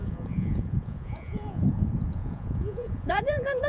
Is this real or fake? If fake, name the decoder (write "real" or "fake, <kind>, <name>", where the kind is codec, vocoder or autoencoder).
fake, vocoder, Vocos